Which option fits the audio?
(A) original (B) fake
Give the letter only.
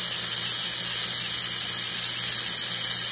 A